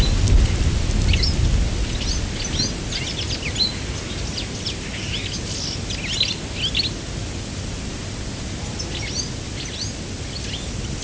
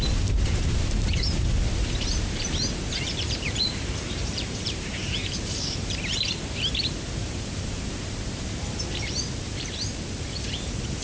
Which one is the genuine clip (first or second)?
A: first